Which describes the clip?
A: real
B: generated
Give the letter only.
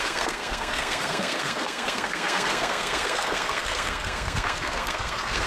B